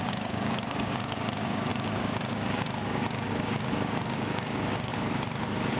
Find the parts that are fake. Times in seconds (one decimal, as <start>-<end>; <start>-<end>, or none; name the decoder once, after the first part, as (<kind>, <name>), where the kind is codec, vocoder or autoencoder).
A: 0.0-4.9 (codec, DAC)